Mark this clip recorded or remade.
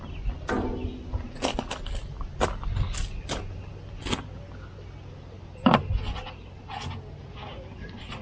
recorded